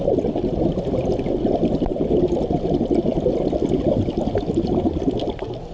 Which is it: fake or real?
real